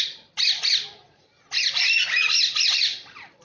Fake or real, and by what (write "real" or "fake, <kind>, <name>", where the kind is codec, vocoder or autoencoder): fake, vocoder, BigVGAN v2